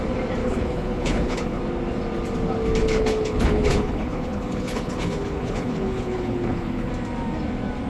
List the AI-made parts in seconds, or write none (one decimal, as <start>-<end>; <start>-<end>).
0.4-1.6; 2.8-6.9